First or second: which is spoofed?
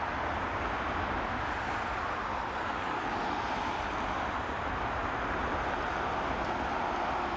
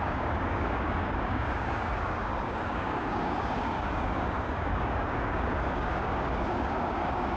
second